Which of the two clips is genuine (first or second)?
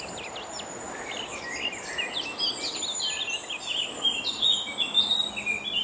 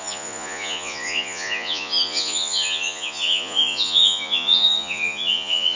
first